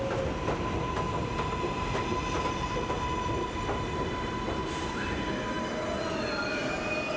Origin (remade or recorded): recorded